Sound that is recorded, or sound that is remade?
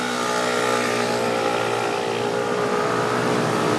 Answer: recorded